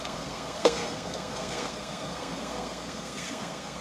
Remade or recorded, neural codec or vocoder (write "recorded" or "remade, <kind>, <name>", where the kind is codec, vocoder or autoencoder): remade, codec, SNAC